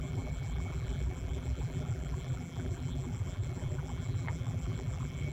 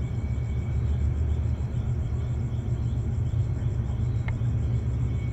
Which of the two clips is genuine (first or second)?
second